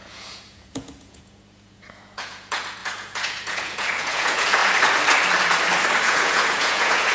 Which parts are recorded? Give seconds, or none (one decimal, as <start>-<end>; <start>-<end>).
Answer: 4.6-6.0